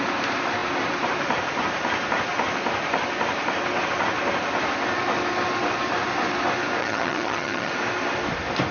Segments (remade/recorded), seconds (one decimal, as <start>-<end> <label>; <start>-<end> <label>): 0.0-6.8 recorded; 6.8-7.7 remade; 7.7-8.7 recorded